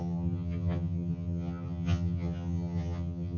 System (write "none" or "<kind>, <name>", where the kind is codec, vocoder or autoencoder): vocoder, HiFi-GAN